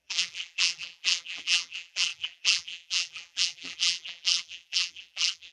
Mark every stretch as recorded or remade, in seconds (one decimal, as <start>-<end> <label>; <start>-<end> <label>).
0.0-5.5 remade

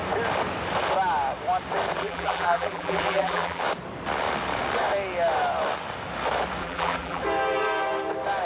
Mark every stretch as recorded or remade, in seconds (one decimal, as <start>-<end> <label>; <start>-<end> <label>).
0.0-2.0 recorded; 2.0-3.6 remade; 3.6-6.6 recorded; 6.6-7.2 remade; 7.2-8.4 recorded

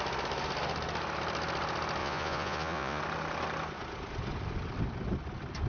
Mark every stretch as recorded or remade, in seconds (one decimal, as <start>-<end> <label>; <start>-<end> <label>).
0.0-2.0 recorded; 2.0-3.0 remade; 3.0-5.7 recorded

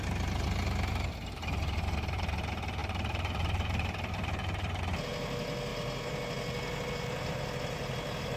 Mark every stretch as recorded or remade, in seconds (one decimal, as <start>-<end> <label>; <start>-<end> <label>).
0.0-2.8 recorded; 2.8-4.8 remade; 4.8-8.4 recorded

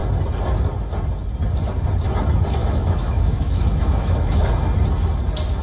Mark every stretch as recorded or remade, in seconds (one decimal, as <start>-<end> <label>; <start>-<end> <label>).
0.0-2.6 recorded; 2.6-4.5 remade; 4.5-5.6 recorded